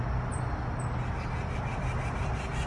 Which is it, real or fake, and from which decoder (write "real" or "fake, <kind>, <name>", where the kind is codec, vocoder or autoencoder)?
real